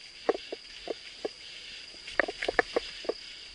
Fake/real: real